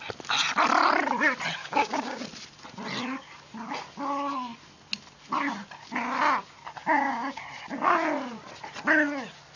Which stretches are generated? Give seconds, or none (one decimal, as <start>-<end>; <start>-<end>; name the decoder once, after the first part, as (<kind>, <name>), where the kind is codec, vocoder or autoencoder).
1.6-2.2 (codec, DAC); 6.8-7.4